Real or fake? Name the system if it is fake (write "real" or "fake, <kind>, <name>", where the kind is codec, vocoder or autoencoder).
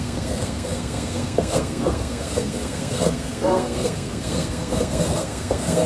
fake, codec, SNAC